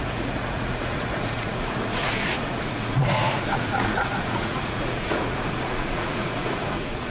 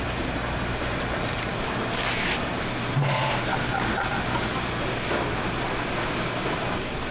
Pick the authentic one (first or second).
second